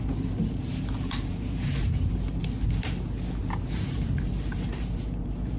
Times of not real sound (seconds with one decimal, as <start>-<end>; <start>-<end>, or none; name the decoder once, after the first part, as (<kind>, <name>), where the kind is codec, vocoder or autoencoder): 0.0-2.4 (vocoder, BigVGAN v2); 3.4-5.6